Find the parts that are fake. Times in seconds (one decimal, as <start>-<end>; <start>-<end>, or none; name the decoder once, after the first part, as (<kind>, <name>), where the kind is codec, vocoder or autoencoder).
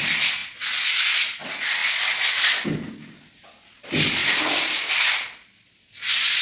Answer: none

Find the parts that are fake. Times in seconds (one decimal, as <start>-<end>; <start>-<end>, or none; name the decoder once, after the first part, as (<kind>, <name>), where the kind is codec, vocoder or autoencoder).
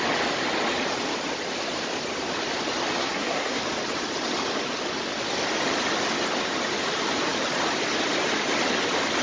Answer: 3.0-3.6 (codec, SNAC)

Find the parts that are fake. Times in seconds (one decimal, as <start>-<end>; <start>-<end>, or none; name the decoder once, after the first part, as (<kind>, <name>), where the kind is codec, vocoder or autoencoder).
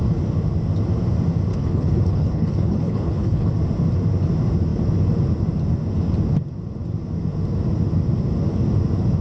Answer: 1.5-3.5 (codec, HILCodec)